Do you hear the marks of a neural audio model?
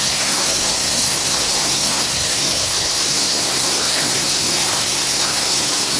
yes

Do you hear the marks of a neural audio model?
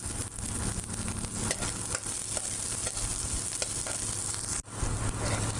no